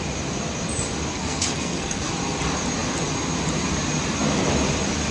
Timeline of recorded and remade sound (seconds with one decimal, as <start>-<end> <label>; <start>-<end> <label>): 0.0-1.1 recorded; 1.1-2.1 remade; 2.1-5.1 recorded